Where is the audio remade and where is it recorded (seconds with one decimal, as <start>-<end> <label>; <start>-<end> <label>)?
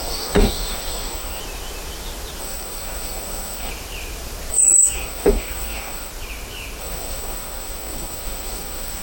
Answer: 0.0-1.4 remade; 1.4-2.4 recorded; 2.4-3.7 remade; 3.7-4.5 recorded; 4.5-6.1 remade; 6.1-6.8 recorded; 6.8-9.0 remade